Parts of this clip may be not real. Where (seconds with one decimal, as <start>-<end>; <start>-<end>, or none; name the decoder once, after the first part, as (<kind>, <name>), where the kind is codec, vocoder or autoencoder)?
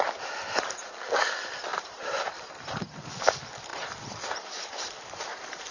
1.7-2.5 (vocoder, BigVGAN v2); 3.7-5.7